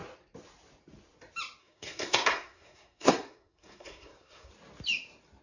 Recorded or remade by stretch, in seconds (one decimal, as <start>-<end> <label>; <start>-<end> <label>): 0.0-1.6 recorded; 1.6-4.5 remade; 4.5-5.4 recorded